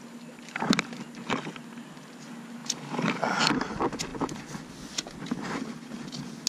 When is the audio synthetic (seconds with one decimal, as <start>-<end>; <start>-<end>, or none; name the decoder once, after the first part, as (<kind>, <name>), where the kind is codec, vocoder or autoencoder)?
none